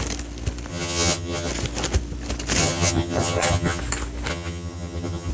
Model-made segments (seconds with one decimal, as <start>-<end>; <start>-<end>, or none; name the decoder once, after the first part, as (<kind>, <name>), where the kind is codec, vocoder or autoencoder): 0.7-1.5 (vocoder, HiFi-GAN); 2.6-3.8; 4.3-5.3

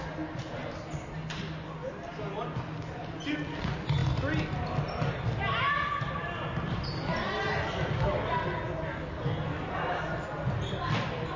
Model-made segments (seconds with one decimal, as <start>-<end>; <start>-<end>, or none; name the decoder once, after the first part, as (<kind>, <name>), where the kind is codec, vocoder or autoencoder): none

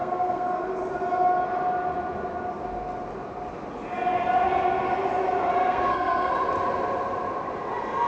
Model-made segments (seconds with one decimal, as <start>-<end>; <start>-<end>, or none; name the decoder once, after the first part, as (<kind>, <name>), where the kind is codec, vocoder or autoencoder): 0.0-0.8 (codec, SNAC); 5.6-6.3

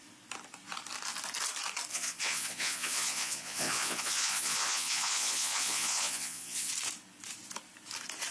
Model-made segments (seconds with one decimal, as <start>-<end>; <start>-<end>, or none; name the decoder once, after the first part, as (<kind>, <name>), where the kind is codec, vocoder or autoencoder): 1.9-6.7 (vocoder, Vocos)

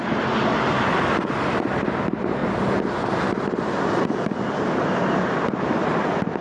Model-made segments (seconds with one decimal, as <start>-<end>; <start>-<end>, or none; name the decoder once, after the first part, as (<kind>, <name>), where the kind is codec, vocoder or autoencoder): none

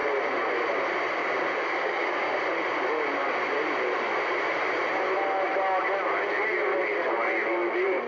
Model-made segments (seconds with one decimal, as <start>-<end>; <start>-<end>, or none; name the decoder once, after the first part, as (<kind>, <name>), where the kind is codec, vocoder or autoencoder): 1.2-2.3 (codec, DAC)

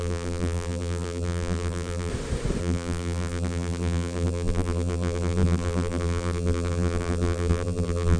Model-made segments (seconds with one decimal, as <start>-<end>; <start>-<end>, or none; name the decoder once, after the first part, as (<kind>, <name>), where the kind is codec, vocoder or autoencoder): 0.0-2.1 (vocoder, BigVGAN v2); 2.6-8.2

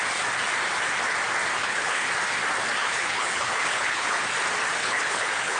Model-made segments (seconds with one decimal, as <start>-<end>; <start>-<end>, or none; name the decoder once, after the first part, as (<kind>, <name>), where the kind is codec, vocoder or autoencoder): 1.6-2.1 (codec, HILCodec); 2.8-4.2; 4.8-5.6